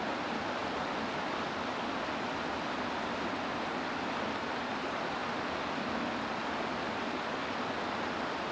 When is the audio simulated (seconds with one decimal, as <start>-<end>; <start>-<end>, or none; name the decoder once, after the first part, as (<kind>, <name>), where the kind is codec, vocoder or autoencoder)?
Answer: none